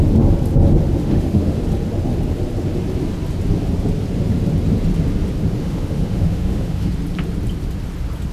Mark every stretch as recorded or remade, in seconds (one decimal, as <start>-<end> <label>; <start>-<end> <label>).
0.0-1.0 recorded; 1.0-1.6 remade; 1.6-5.6 recorded; 5.6-6.9 remade; 6.9-8.3 recorded